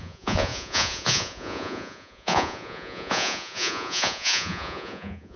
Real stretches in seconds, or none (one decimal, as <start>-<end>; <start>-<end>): none